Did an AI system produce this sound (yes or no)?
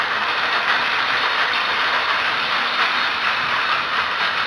yes